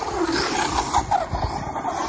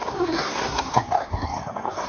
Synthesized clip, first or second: second